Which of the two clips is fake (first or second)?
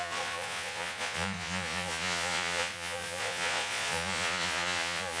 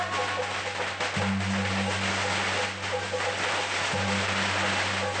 first